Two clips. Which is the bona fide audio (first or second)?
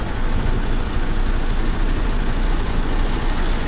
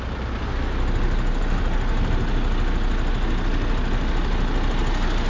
second